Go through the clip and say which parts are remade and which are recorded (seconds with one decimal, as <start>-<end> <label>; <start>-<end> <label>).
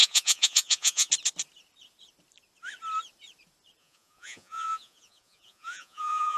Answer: 0.0-1.1 remade; 1.1-3.8 recorded; 3.8-6.4 remade